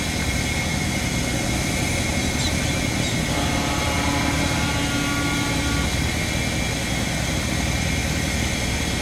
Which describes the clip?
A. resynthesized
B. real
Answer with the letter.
B